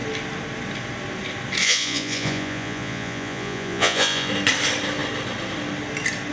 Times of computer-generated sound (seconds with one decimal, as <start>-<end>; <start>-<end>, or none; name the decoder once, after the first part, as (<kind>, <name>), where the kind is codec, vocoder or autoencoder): 1.6-4.3 (vocoder, Vocos)